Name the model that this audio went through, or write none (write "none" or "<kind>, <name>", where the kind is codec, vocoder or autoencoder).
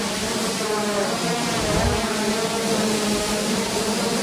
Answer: vocoder, BigVGAN v2